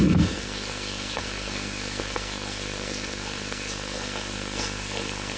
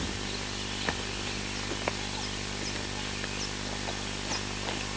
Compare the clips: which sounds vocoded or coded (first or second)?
first